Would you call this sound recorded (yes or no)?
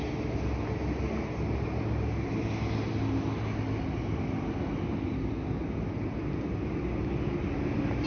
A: yes